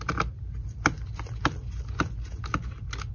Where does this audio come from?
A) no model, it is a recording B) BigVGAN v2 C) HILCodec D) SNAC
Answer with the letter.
A